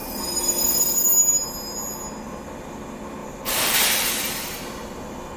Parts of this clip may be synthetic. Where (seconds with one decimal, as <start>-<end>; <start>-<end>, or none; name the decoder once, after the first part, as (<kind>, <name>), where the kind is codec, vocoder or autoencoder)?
0.0-0.9 (vocoder, BigVGAN v2); 3.2-4.6